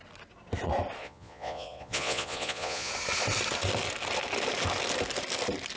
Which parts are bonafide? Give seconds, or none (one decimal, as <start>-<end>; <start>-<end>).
0.0-1.0; 2.9-5.8